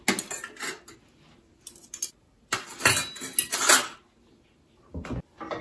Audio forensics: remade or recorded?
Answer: recorded